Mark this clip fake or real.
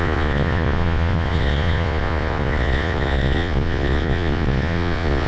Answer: fake